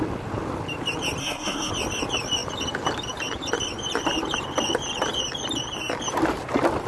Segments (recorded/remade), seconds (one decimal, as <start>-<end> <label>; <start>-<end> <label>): 0.0-1.2 recorded; 1.2-1.7 remade; 1.7-6.9 recorded